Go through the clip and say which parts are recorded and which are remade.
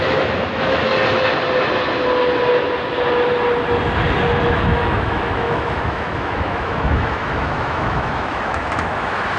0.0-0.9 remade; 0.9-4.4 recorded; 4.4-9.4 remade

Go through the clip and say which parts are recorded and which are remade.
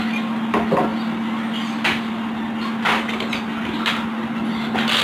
0.0-5.0 recorded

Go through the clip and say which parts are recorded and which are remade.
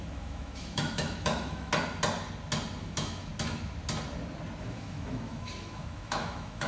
0.0-1.7 remade; 1.7-2.8 recorded; 2.8-3.3 remade; 3.3-4.6 recorded; 4.6-6.7 remade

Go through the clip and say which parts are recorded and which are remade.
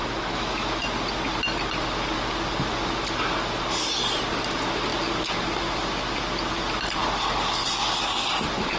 0.0-0.7 remade; 0.7-8.8 recorded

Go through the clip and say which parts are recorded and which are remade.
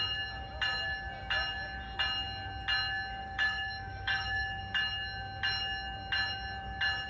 0.0-3.2 recorded; 3.2-4.6 remade; 4.6-7.1 recorded